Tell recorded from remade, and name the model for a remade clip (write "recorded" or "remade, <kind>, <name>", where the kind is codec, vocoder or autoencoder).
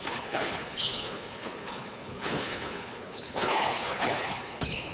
remade, codec, HILCodec